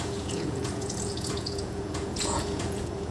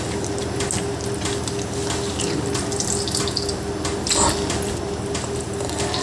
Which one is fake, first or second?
first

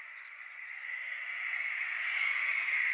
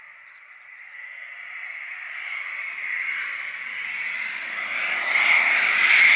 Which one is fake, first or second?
first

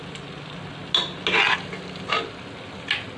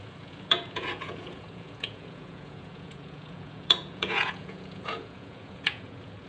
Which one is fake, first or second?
second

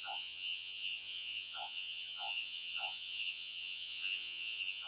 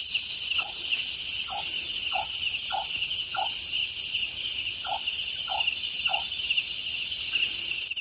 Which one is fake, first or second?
first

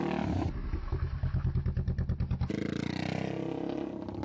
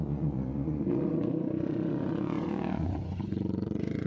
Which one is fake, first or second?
second